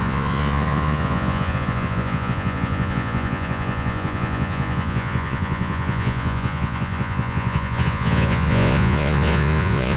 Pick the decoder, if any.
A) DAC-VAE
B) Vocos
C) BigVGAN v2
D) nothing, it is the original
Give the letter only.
B